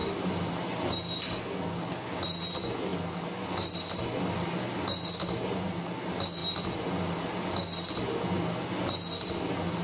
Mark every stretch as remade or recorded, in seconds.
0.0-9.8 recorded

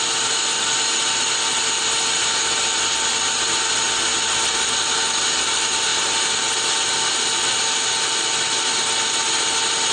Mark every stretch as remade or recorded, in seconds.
0.0-9.9 recorded